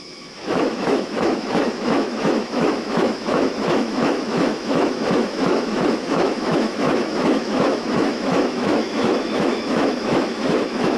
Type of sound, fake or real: fake